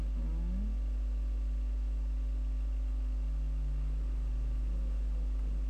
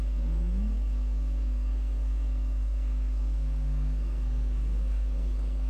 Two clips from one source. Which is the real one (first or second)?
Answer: first